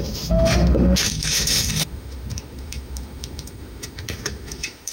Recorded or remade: remade